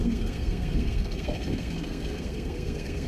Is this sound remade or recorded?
remade